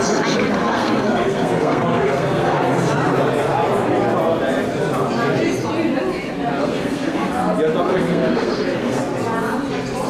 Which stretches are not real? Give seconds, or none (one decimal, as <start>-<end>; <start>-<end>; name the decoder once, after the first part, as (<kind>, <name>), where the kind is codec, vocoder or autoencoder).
0.6-2.9 (codec, SNAC); 6.6-7.3; 7.9-9.0